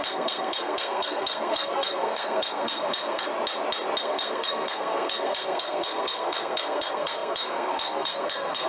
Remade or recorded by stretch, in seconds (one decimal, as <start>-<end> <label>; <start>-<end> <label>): 0.0-3.3 remade; 3.3-4.0 recorded; 4.0-8.7 remade